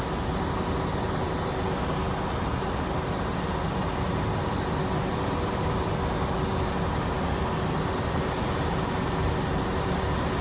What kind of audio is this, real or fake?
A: real